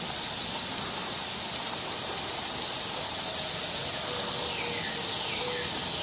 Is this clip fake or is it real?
real